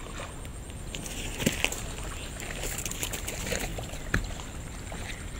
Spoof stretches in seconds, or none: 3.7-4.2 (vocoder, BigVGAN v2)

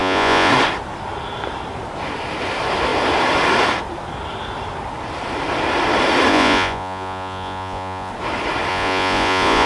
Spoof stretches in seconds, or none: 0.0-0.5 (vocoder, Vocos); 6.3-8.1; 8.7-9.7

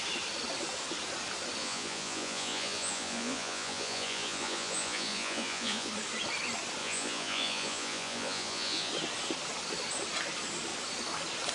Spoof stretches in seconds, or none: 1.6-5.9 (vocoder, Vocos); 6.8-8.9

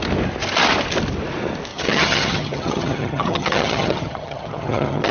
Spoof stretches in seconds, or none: 1.7-5.1 (vocoder, HiFi-GAN)